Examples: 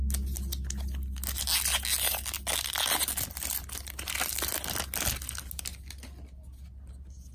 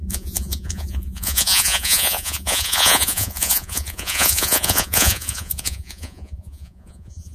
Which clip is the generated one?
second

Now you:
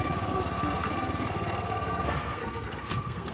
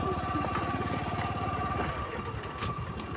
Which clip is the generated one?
first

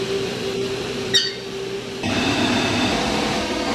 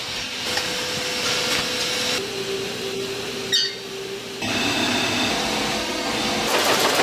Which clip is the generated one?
first